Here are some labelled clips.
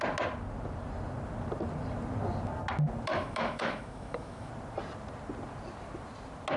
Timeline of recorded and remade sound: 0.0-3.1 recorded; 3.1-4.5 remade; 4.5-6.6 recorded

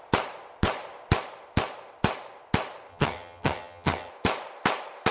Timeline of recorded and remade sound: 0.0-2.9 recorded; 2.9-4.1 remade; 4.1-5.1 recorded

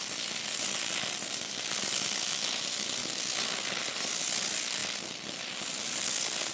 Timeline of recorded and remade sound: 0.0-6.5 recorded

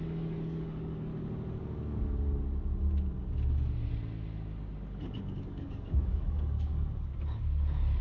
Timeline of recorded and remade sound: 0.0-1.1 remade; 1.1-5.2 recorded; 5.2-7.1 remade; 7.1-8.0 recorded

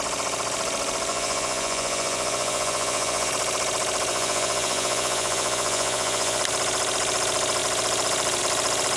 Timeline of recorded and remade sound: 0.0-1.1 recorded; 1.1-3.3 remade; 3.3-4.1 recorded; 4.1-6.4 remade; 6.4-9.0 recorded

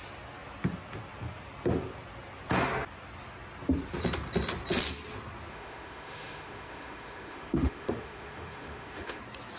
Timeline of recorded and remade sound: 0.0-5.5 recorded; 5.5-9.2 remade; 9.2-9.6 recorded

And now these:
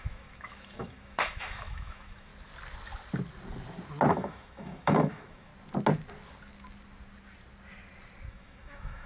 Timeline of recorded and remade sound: 0.0-2.3 remade; 2.3-4.1 recorded; 4.1-5.5 remade; 5.5-8.3 recorded; 8.3-9.1 remade